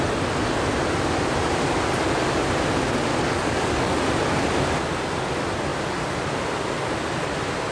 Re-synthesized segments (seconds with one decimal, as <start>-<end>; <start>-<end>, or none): 3.1-4.0